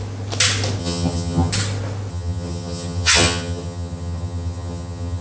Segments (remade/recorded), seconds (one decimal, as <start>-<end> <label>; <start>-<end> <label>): 0.0-0.8 recorded; 0.8-1.5 remade; 1.5-2.1 recorded; 2.1-5.2 remade